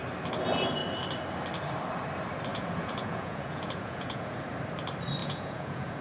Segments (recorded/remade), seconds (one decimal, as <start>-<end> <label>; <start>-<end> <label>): 0.0-2.5 recorded; 2.5-4.4 remade; 4.4-5.2 recorded; 5.2-6.0 remade